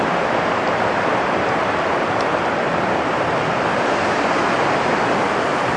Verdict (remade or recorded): recorded